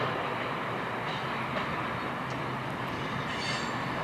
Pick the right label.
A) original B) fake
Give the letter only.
A